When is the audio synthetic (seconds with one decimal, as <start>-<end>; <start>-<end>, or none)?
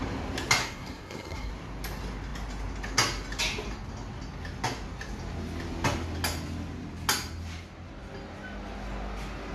0.6-1.5